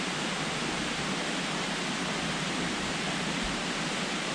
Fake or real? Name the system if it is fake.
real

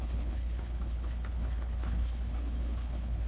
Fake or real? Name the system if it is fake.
fake, codec, HILCodec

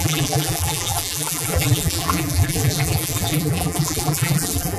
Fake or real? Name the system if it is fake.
fake, vocoder, BigVGAN v2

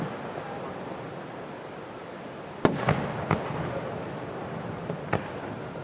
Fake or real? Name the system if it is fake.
real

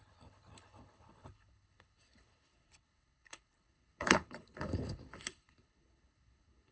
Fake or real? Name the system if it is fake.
fake, codec, HILCodec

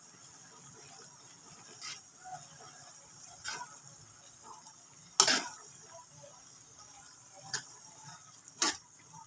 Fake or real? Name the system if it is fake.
real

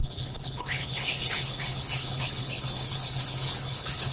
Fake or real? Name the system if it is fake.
fake, codec, HILCodec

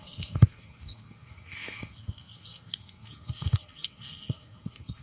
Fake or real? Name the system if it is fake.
fake, codec, SNAC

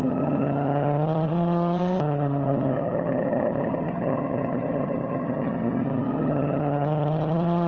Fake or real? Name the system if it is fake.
fake, vocoder, HiFi-GAN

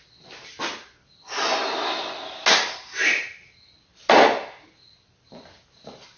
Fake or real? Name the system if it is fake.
real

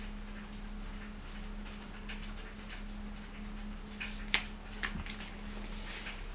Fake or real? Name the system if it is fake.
real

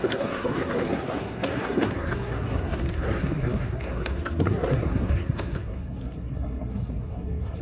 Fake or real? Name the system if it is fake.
fake, codec, SNAC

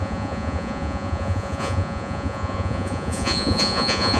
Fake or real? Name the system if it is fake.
fake, vocoder, Vocos